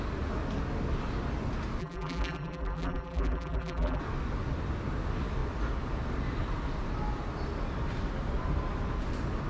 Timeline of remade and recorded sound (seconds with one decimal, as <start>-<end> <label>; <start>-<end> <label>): 0.0-1.8 recorded; 1.8-4.0 remade; 4.0-9.5 recorded